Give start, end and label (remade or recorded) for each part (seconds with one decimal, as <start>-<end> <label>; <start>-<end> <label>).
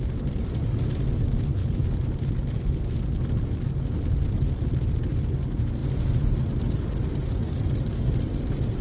0.0-8.8 recorded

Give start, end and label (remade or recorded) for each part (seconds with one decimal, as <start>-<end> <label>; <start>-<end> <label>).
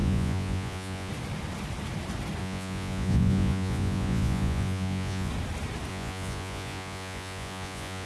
0.0-1.1 remade; 1.1-2.4 recorded; 2.4-5.3 remade; 5.3-5.9 recorded; 5.9-8.1 remade